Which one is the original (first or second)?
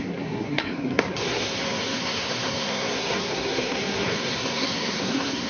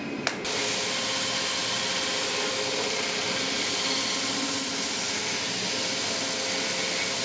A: second